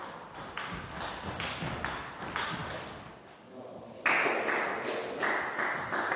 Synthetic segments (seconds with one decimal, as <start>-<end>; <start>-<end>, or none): none